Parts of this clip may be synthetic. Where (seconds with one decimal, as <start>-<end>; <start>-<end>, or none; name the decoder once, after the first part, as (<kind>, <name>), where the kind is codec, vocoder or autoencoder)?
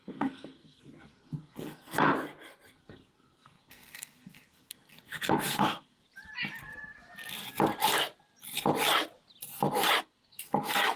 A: 0.0-2.1 (codec, SNAC); 2.7-6.0; 10.0-11.0